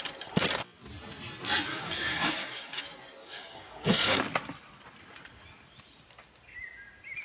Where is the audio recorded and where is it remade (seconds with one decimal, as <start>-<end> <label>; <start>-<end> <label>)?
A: 0.0-1.7 recorded; 1.7-2.8 remade; 2.8-3.2 recorded; 3.2-4.2 remade; 4.2-7.2 recorded